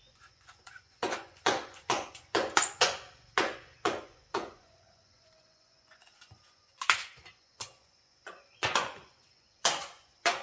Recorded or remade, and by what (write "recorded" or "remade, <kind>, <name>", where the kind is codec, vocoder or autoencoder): remade, vocoder, Vocos